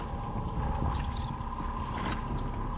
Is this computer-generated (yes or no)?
no